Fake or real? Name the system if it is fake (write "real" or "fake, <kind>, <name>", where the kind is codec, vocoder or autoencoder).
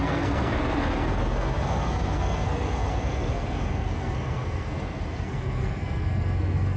fake, codec, SNAC